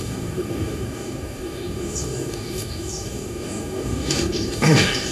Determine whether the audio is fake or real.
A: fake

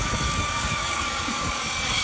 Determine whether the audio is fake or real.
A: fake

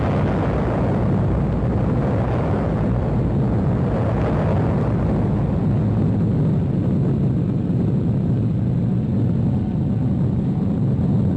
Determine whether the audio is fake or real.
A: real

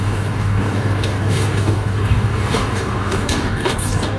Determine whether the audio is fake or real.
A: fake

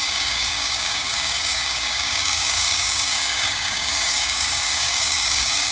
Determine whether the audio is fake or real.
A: fake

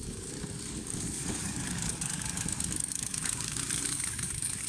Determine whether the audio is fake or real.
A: fake